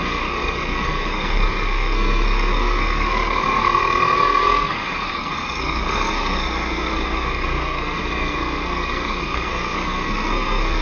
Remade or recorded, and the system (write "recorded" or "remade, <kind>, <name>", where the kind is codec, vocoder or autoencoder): remade, codec, SNAC